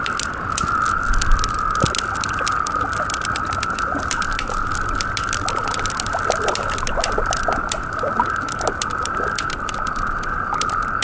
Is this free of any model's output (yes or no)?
yes